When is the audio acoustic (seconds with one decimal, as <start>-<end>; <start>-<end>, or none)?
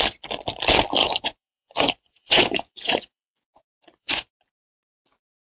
0.0-1.0; 4.3-5.5